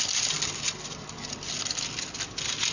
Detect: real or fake real